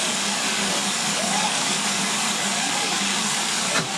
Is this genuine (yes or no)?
no